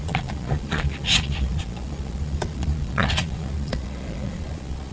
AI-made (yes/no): yes